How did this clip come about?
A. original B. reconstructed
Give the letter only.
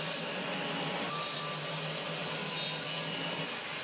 A